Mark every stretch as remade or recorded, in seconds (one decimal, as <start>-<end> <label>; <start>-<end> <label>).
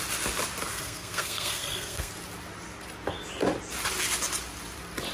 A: 0.0-0.7 recorded; 0.7-2.1 remade; 2.1-5.1 recorded